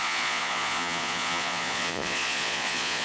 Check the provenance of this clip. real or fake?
fake